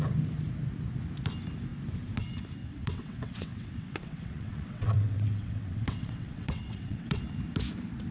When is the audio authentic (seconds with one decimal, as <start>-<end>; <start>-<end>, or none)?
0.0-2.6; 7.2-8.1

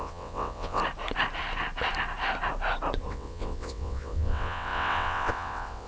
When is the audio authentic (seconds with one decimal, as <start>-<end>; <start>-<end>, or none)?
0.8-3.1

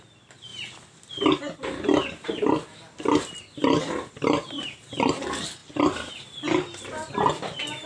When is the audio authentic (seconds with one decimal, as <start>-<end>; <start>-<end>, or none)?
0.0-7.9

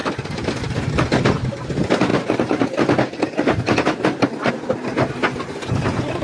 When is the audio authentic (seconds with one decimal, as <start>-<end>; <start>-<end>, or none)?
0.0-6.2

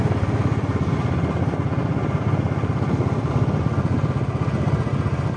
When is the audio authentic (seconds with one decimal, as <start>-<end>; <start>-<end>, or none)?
0.0-5.4

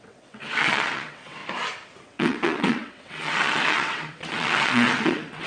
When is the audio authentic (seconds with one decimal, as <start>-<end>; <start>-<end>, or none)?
1.4-2.0

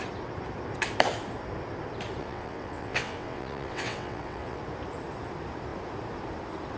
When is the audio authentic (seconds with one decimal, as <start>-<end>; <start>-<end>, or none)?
0.0-2.2; 4.6-6.8